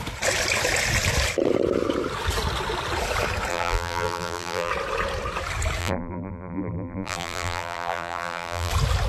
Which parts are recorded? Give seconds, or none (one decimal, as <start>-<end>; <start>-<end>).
0.0-3.5; 4.7-5.8; 8.7-9.1